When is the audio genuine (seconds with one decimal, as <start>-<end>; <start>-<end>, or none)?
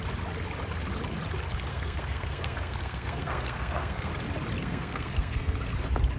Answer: 0.0-1.7; 4.1-4.6; 5.6-6.2